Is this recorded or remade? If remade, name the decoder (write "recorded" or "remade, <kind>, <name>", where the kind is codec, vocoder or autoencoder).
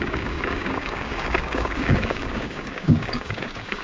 remade, codec, DAC